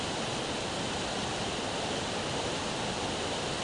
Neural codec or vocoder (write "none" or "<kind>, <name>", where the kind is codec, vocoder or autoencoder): none